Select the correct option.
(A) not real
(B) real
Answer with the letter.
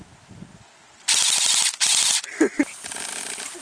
B